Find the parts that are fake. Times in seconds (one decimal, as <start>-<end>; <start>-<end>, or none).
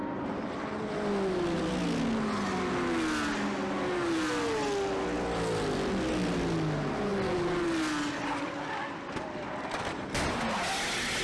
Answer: none